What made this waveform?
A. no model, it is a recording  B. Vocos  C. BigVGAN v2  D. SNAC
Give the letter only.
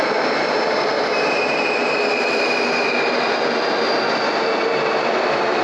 A